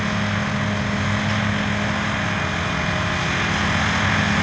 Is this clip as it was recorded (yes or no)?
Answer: yes